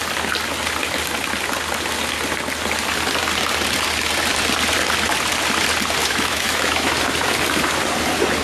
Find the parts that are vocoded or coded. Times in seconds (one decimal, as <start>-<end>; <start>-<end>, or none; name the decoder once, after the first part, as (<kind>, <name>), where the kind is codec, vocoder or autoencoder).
6.0-6.9 (autoencoder, DAC-VAE)